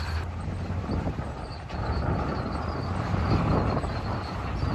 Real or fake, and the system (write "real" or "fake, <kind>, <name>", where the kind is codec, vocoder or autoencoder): real